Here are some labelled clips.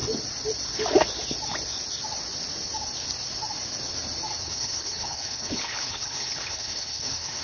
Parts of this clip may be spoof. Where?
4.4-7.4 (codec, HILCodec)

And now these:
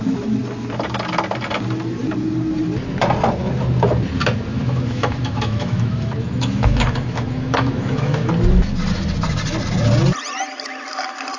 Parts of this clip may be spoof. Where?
4.5-8.3 (autoencoder, DAC-VAE)

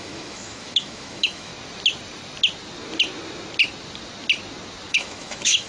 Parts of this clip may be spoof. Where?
0.0-1.5 (autoencoder, DAC-VAE); 4.9-5.7

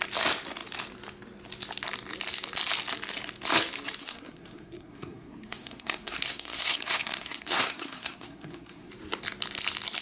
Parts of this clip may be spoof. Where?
4.0-8.9 (codec, SNAC)

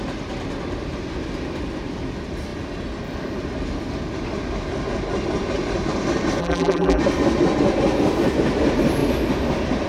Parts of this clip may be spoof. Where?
6.4-7.0 (vocoder, BigVGAN v2)

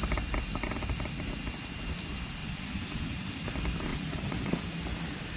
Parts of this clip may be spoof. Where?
2.4-3.3 (vocoder, WaveNeXt); 3.9-4.6

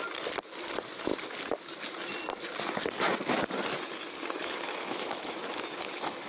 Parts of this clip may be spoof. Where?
4.4-6.3 (autoencoder, DAC-VAE)